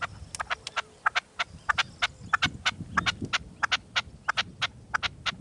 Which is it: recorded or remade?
recorded